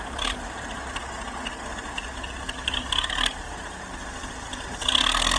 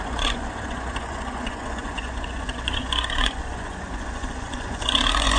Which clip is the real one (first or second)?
first